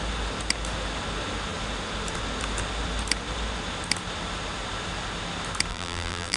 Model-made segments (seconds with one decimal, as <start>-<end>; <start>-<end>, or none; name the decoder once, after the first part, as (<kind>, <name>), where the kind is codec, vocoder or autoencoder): 5.7-6.4 (vocoder, BigVGAN v2)

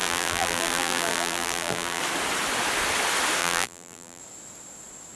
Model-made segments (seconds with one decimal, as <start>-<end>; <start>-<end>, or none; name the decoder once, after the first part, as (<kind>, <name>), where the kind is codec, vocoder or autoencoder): 0.0-2.0 (vocoder, BigVGAN v2); 3.4-4.2